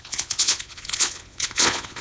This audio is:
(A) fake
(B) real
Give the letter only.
A